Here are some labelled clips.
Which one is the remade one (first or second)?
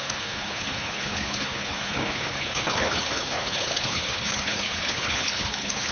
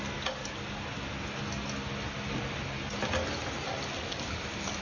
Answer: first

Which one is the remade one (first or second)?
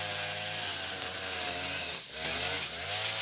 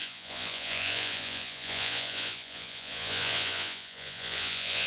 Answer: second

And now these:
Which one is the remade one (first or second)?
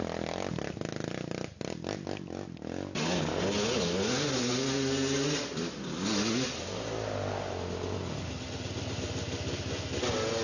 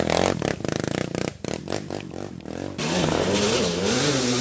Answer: second